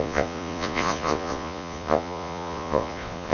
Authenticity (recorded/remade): remade